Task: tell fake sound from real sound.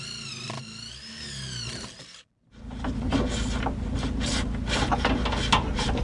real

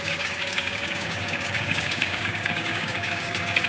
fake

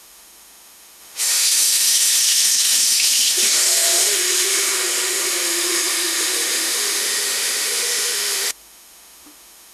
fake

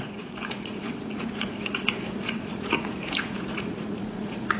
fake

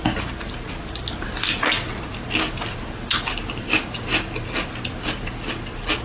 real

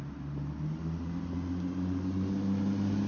real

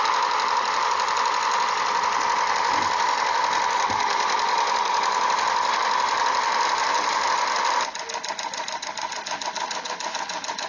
real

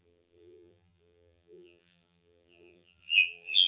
fake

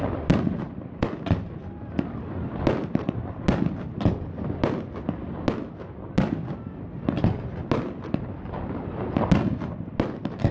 real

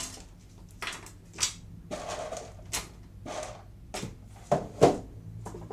real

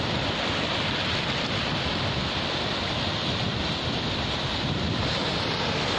real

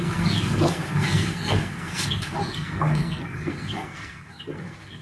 fake